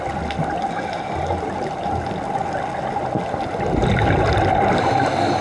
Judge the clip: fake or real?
real